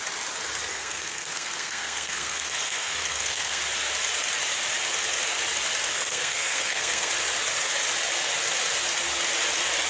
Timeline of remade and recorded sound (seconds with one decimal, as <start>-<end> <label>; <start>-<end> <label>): 0.0-0.7 recorded; 0.7-3.6 remade; 3.6-5.9 recorded; 5.9-7.1 remade; 7.1-9.9 recorded